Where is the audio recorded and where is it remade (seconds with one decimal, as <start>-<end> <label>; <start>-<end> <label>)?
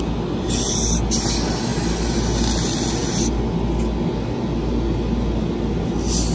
0.0-6.3 recorded